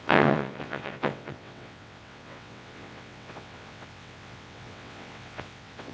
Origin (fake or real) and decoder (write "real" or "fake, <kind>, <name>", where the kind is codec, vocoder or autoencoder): fake, vocoder, WaveNeXt